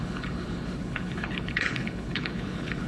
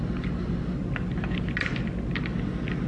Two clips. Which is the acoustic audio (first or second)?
second